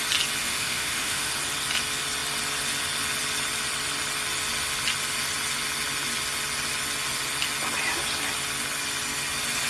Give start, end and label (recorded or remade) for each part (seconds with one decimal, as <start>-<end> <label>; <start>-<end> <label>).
0.0-0.4 recorded; 0.4-1.3 remade; 1.3-9.7 recorded